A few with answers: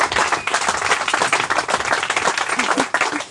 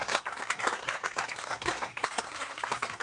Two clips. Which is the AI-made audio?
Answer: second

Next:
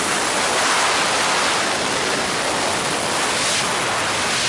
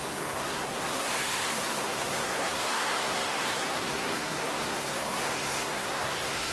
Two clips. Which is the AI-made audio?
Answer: second